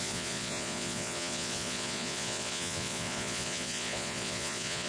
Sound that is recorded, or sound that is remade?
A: remade